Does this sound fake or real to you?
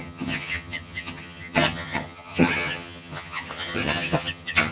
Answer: fake